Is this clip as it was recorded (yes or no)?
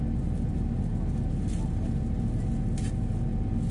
yes